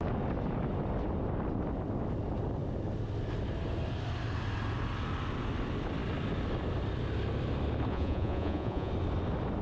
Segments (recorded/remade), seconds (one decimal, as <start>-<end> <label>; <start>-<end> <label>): 0.0-7.9 recorded; 7.9-8.9 remade; 8.9-9.6 recorded

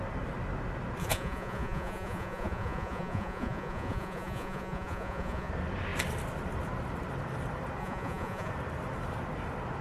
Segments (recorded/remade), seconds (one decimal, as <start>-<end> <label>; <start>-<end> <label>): 0.0-1.0 recorded; 1.0-5.5 remade; 5.5-7.8 recorded; 7.8-8.5 remade; 8.5-9.8 recorded